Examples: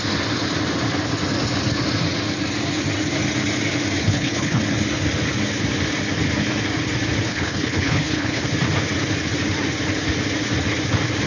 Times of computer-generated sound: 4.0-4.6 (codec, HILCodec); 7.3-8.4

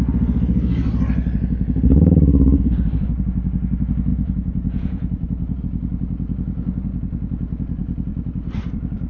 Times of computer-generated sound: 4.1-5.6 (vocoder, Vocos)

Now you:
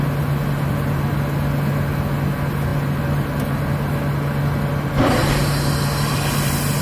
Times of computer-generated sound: 2.7-6.8 (vocoder, BigVGAN v2)